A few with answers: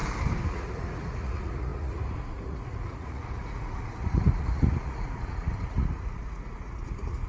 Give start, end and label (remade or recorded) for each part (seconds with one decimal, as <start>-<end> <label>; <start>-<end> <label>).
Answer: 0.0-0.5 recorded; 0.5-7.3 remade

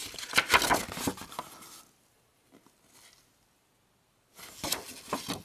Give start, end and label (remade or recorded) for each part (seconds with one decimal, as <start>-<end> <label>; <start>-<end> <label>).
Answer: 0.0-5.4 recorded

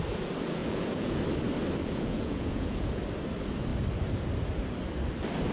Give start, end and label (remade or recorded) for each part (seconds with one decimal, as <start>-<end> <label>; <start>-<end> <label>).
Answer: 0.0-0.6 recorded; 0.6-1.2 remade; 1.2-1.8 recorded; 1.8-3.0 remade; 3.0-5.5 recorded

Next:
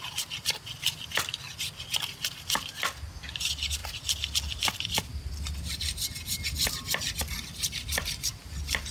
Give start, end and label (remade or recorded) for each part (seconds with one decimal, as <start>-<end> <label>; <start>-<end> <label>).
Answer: 0.0-8.9 recorded

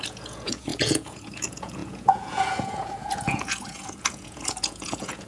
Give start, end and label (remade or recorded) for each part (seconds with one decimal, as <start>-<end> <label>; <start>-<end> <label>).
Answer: 0.0-5.3 remade

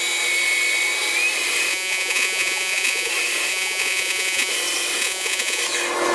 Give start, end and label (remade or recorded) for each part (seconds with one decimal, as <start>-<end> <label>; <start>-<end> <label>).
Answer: 0.0-1.7 recorded; 1.7-3.1 remade; 3.1-3.5 recorded; 3.5-4.5 remade; 4.5-5.0 recorded; 5.0-5.6 remade; 5.6-6.1 recorded